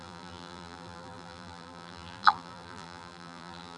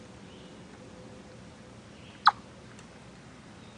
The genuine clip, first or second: second